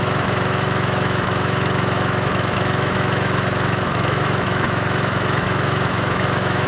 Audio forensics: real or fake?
fake